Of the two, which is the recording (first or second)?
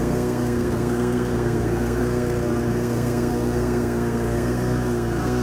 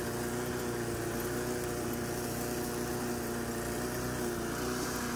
second